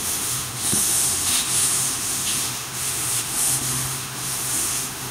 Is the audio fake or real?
fake